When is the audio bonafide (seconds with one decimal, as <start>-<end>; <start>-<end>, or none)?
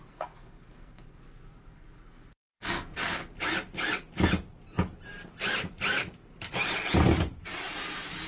3.2-8.3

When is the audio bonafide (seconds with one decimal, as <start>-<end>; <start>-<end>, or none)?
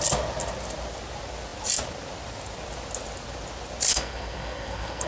0.0-3.9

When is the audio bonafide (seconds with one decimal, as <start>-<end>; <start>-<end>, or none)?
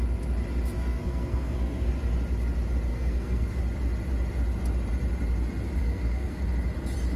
0.0-0.8; 1.9-2.9; 3.6-5.8; 6.4-7.2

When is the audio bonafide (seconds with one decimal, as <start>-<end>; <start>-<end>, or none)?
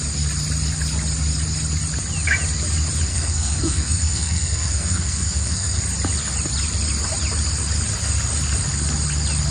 0.0-3.1; 5.8-9.5